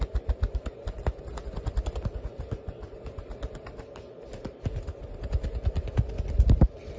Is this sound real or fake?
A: real